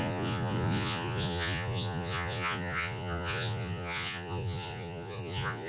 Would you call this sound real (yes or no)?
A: no